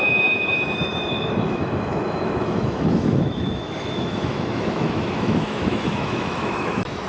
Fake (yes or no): yes